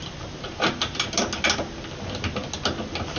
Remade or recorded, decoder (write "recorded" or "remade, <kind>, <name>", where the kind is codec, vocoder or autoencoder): recorded